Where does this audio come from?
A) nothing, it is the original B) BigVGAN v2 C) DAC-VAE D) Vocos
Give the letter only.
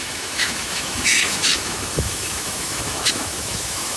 C